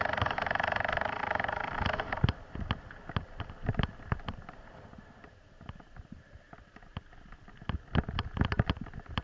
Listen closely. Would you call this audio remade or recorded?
recorded